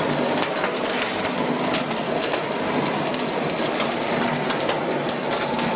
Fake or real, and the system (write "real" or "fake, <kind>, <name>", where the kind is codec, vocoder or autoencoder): real